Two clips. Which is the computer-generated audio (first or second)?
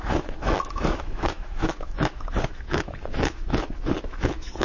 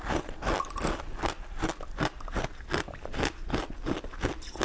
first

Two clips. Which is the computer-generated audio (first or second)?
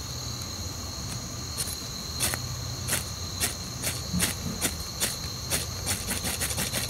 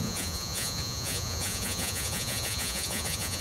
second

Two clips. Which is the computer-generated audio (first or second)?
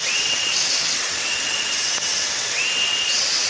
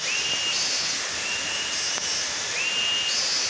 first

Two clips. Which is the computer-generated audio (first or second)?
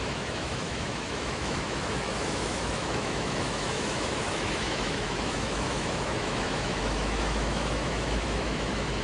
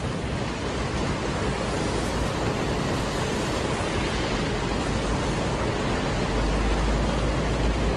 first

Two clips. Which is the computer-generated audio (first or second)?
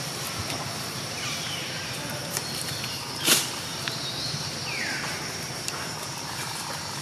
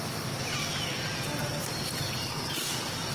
first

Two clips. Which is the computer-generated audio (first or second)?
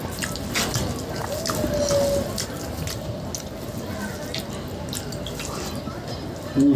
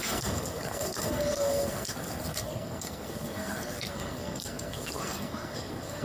second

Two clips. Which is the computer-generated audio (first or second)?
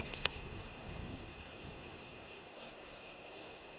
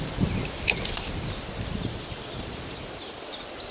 first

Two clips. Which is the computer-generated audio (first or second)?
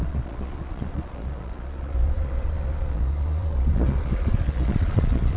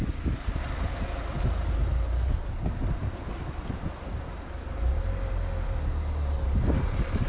first